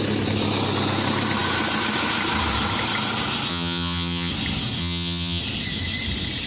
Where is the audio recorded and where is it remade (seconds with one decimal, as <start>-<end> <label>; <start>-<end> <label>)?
0.0-3.5 recorded; 3.5-4.3 remade; 4.3-4.8 recorded; 4.8-5.4 remade; 5.4-6.5 recorded